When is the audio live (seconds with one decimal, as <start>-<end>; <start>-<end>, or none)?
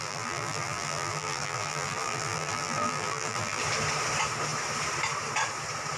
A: 3.6-6.0